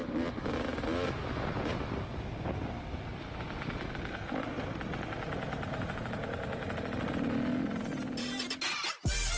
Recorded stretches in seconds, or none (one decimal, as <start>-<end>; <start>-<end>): 0.0-9.4